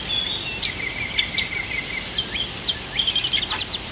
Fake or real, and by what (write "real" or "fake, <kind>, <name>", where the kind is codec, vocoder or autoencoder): real